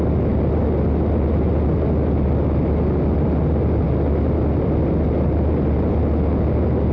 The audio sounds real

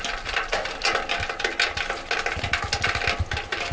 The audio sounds real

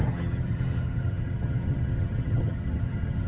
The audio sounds fake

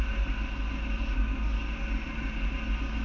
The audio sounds real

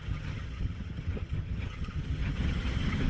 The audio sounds fake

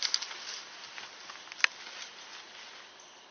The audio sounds real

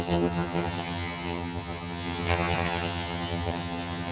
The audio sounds fake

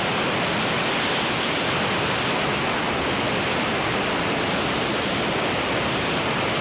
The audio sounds real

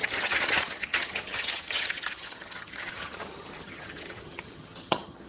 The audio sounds fake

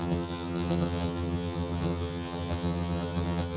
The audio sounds fake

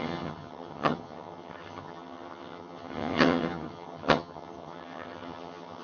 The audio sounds fake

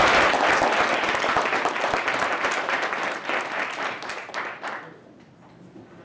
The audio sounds real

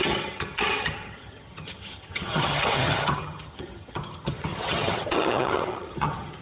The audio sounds fake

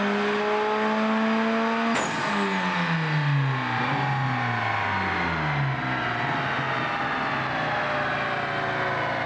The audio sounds real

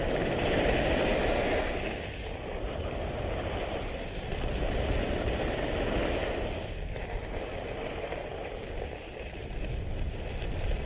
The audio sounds real